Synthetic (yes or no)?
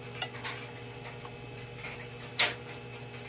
no